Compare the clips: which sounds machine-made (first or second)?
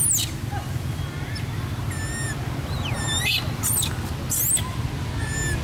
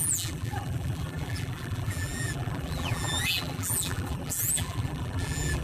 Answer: second